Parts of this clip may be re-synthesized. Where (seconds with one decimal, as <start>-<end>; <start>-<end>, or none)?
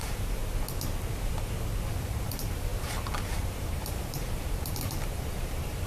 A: 0.0-0.4; 1.9-5.9